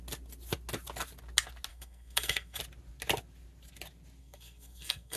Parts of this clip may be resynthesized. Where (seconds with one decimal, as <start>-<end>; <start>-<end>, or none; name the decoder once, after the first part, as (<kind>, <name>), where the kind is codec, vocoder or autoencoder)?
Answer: 1.7-2.6 (codec, SNAC); 4.2-5.2